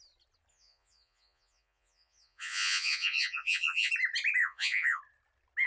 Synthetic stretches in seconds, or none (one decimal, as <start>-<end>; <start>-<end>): 0.5-3.9; 4.4-5.0